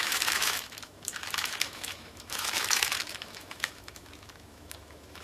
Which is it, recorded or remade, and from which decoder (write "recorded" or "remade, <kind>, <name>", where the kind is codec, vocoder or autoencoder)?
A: remade, autoencoder, DAC-VAE